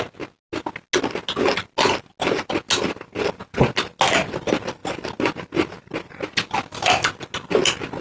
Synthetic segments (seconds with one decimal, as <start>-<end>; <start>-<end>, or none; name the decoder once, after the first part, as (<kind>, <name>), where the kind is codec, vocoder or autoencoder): none